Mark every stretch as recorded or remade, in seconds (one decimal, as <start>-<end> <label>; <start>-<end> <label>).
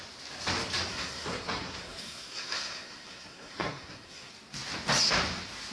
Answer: 0.0-0.9 recorded; 0.9-4.3 remade; 4.3-5.7 recorded